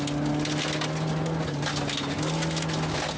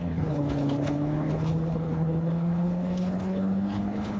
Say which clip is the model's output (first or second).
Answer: second